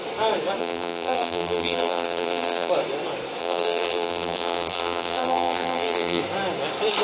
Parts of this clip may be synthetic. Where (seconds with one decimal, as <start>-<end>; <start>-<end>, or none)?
0.6-2.7; 3.4-6.2